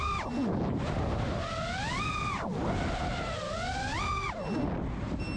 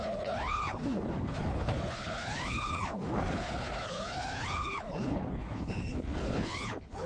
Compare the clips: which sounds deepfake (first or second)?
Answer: second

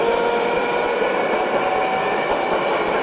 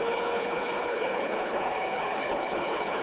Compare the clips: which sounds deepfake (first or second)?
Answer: second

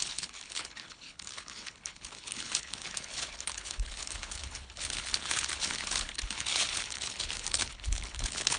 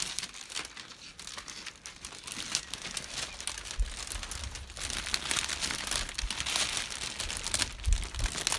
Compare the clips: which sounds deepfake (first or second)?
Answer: first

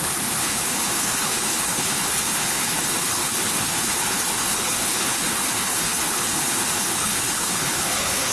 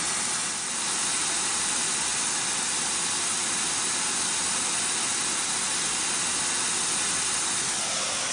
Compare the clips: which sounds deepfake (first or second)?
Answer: first